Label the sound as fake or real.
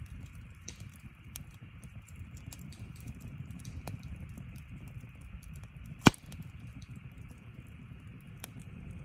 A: fake